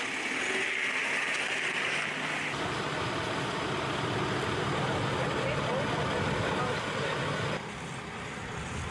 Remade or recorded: recorded